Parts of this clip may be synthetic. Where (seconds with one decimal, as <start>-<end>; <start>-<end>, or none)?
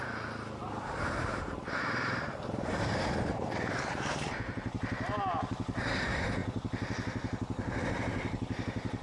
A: 0.6-5.1